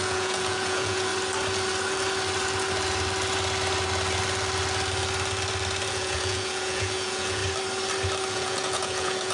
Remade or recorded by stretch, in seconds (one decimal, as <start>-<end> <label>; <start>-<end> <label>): 0.0-1.1 remade; 1.1-5.9 recorded; 5.9-7.4 remade; 7.4-8.3 recorded; 8.3-9.3 remade